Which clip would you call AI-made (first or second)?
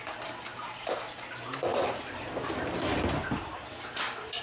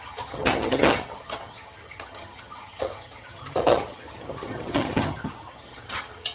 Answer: second